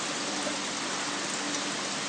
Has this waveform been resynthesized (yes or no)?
no